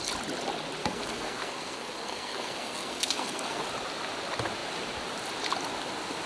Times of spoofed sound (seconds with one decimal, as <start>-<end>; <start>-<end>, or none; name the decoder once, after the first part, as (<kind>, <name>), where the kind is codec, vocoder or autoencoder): 0.8-3.6 (codec, SNAC)